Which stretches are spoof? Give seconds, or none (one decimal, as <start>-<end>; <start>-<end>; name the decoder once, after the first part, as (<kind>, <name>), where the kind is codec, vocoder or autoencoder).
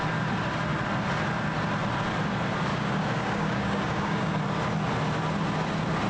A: 2.7-4.4 (codec, DAC)